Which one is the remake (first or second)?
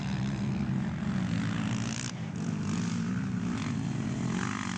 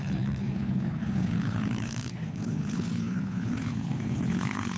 second